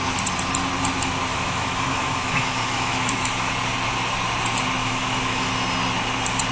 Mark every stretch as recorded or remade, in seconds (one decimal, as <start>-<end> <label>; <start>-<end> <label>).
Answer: 0.0-1.3 recorded; 1.3-3.5 remade; 3.5-4.8 recorded; 4.8-5.5 remade; 5.5-6.5 recorded